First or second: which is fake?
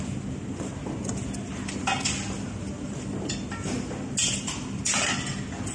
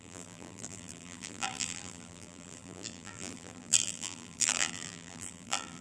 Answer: second